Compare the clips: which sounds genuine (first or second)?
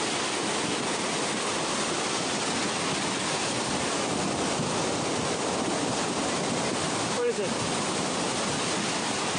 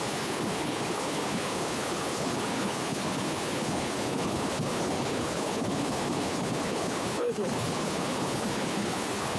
first